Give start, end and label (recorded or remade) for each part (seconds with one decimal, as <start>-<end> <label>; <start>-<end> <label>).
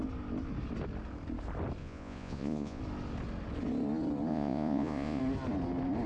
0.0-1.8 recorded; 1.8-2.8 remade; 2.8-4.3 recorded; 4.3-5.2 remade; 5.2-6.1 recorded